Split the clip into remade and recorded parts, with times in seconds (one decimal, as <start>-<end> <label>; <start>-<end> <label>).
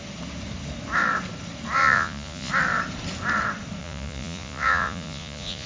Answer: 0.0-1.8 recorded; 1.8-2.5 remade; 2.5-3.8 recorded; 3.8-5.7 remade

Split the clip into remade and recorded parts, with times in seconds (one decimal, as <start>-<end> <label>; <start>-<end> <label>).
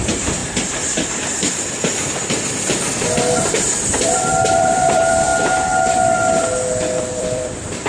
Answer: 0.0-0.4 remade; 0.4-3.5 recorded; 3.5-5.3 remade; 5.3-7.0 recorded; 7.0-7.9 remade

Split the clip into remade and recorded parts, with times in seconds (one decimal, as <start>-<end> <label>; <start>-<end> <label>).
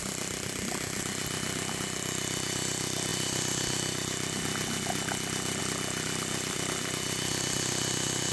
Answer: 0.0-8.3 recorded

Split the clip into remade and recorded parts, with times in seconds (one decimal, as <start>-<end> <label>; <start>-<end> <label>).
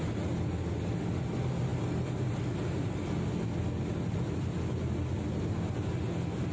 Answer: 0.0-6.5 recorded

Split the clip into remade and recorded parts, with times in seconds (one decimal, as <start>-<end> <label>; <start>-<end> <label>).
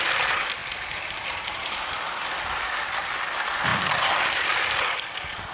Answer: 0.0-0.6 recorded; 0.6-2.0 remade; 2.0-3.7 recorded; 3.7-4.6 remade; 4.6-5.5 recorded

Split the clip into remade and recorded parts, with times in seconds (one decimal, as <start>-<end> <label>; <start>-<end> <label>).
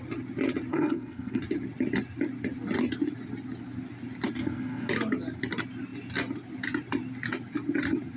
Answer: 0.0-0.7 recorded; 0.7-1.4 remade; 1.4-4.4 recorded; 4.4-4.9 remade; 4.9-8.2 recorded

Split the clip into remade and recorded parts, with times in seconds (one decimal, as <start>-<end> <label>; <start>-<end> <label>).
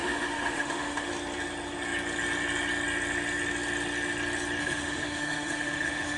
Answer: 0.0-1.1 remade; 1.1-4.6 recorded; 4.6-6.2 remade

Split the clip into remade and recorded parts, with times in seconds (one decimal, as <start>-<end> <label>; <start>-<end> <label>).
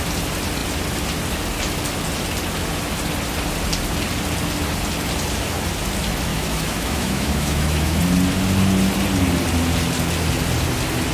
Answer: 0.0-6.3 recorded; 6.3-8.0 remade; 8.0-11.1 recorded